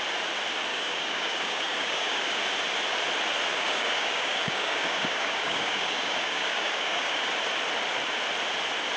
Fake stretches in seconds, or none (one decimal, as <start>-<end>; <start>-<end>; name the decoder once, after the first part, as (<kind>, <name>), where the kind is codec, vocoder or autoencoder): 0.7-2.4 (codec, DAC); 3.5-7.3